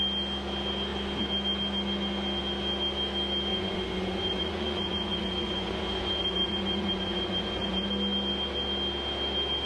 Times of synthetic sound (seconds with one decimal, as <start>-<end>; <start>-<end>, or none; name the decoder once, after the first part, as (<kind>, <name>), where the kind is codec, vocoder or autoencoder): 3.5-7.9 (vocoder, Vocos)